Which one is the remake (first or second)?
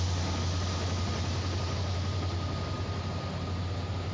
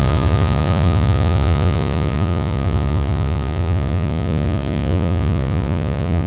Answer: second